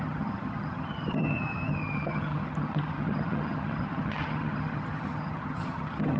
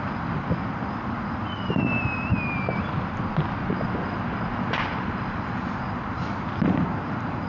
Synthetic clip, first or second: first